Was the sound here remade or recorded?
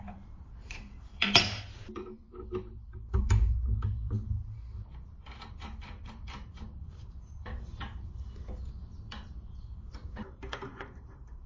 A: remade